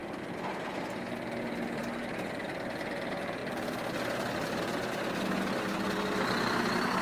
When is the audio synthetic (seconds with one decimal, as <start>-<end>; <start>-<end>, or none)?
none